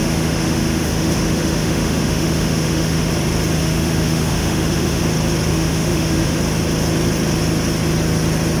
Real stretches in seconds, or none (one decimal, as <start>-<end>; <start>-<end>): 3.1-3.6; 5.0-5.5; 6.4-8.6